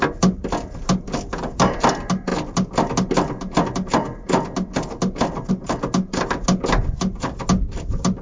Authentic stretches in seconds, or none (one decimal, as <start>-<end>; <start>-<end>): 0.0-8.2